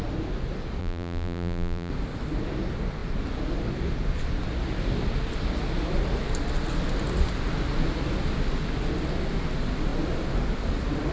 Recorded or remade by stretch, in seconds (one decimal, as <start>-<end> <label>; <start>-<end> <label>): 0.0-0.8 recorded; 0.8-1.9 remade; 1.9-11.1 recorded